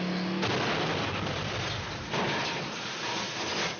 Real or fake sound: real